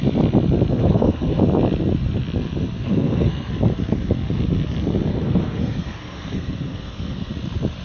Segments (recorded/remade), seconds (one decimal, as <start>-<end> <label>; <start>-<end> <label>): 0.0-0.8 recorded; 0.8-1.4 remade; 1.4-2.8 recorded; 2.8-3.5 remade; 3.5-5.1 recorded; 5.1-7.3 remade; 7.3-7.8 recorded